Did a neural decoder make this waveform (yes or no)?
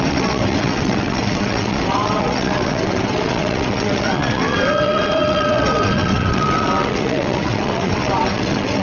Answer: yes